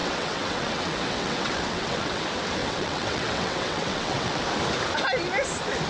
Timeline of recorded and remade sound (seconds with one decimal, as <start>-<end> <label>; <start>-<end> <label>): 0.0-2.2 remade; 2.2-2.6 recorded; 2.6-4.4 remade; 4.4-5.9 recorded